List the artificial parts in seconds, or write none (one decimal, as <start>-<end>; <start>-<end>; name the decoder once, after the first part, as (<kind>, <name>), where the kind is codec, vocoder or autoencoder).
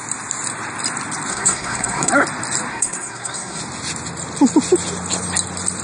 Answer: 1.3-2.1 (codec, SNAC); 2.7-3.6